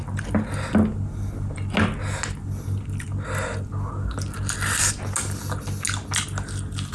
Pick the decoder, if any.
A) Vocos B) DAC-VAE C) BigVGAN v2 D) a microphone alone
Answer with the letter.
D